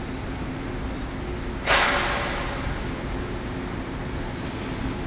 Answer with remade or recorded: recorded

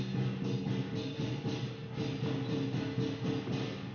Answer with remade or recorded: recorded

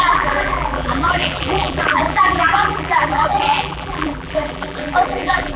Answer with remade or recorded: remade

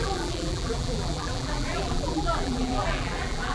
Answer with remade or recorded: remade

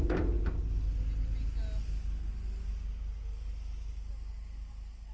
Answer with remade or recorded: recorded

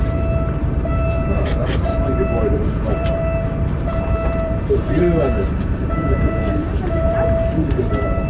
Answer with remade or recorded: remade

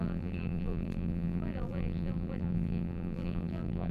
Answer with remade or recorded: remade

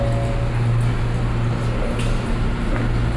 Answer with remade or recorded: recorded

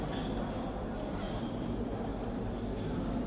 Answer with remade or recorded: recorded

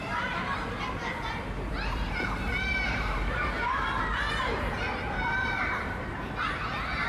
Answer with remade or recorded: remade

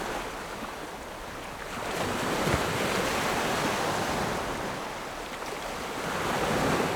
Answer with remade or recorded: recorded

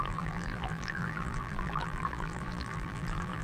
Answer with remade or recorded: remade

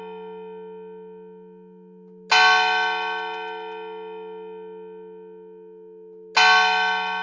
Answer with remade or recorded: recorded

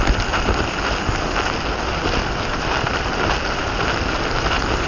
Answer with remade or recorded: recorded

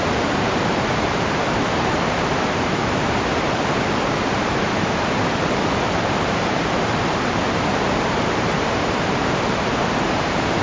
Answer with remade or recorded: remade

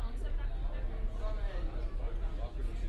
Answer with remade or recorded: recorded